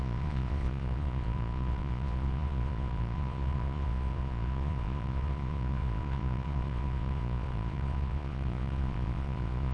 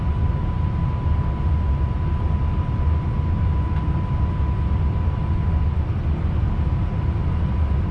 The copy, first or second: first